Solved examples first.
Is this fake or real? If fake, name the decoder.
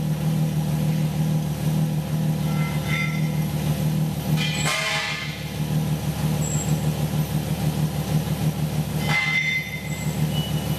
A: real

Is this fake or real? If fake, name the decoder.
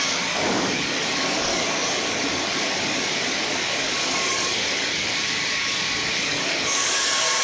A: fake, codec, DAC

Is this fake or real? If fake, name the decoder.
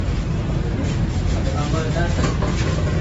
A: real